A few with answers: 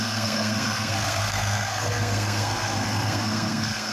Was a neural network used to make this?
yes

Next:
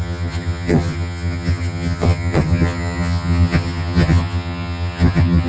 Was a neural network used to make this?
yes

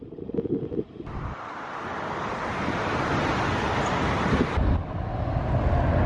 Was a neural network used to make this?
no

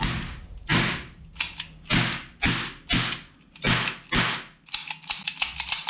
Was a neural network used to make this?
no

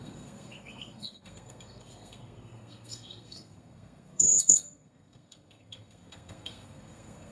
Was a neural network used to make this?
yes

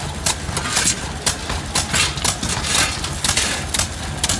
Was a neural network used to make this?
no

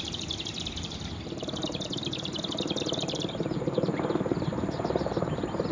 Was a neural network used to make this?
yes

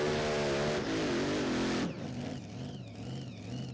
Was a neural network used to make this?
no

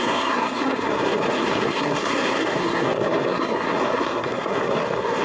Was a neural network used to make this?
yes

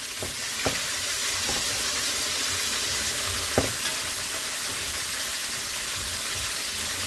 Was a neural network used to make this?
no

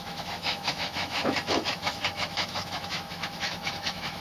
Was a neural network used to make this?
yes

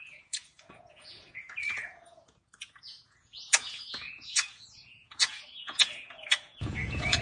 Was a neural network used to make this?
yes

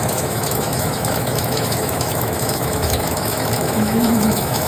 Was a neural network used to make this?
yes